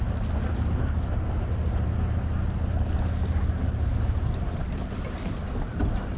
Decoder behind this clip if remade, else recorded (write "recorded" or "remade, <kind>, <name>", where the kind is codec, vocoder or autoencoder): recorded